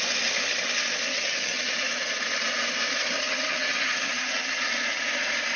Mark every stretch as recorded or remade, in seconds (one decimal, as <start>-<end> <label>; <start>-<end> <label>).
0.0-1.1 recorded; 1.1-1.7 remade; 1.7-3.2 recorded; 3.2-4.7 remade; 4.7-5.6 recorded